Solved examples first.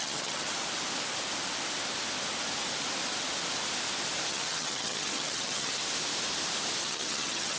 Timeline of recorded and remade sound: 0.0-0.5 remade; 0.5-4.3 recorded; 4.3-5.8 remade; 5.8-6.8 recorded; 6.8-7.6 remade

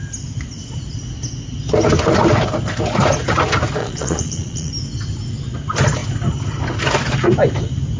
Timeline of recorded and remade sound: 0.0-3.8 recorded; 3.8-4.7 remade; 4.7-8.0 recorded

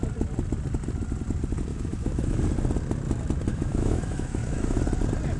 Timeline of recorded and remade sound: 0.0-1.7 recorded; 1.7-2.4 remade; 2.4-3.5 recorded; 3.5-4.8 remade; 4.8-5.4 recorded